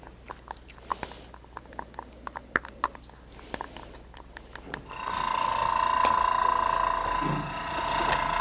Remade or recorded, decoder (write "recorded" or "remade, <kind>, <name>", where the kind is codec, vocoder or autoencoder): recorded